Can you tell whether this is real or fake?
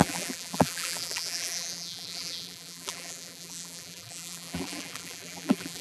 fake